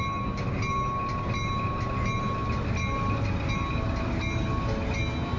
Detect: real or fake real